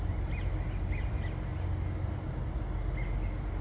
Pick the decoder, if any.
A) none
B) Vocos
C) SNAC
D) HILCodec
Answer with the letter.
A